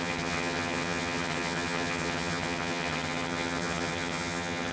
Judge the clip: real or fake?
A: fake